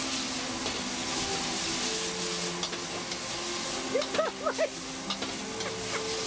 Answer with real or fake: real